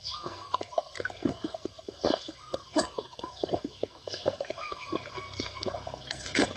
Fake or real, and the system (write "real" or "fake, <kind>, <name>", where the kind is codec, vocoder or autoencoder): fake, codec, SNAC